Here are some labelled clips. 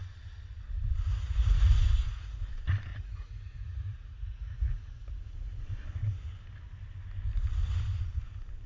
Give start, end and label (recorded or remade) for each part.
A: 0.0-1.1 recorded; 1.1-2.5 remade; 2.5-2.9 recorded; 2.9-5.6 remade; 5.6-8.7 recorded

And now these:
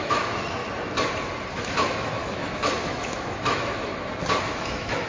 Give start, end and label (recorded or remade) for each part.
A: 0.0-0.6 remade; 0.6-1.5 recorded; 1.5-3.9 remade; 3.9-4.4 recorded; 4.4-5.1 remade

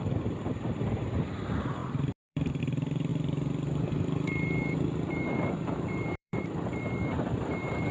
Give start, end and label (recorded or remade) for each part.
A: 0.0-3.1 remade; 3.1-5.1 recorded; 5.1-7.9 remade

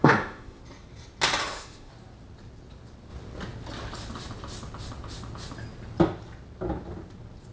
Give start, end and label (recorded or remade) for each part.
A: 0.0-0.6 remade; 0.6-1.4 recorded; 1.4-1.9 remade; 1.9-7.5 recorded

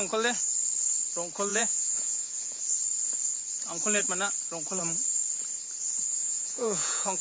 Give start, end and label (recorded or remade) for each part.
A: 0.0-1.5 recorded; 1.5-2.6 remade; 2.6-6.2 recorded; 6.2-7.2 remade

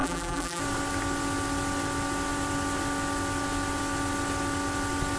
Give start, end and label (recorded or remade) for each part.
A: 0.0-0.6 remade; 0.6-5.2 recorded

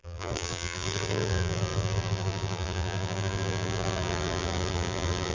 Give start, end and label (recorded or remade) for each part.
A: 0.0-5.3 remade